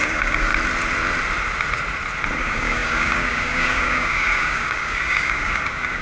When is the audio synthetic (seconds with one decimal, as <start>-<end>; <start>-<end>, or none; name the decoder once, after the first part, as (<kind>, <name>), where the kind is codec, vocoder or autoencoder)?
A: 0.0-0.5 (codec, DAC); 2.4-6.0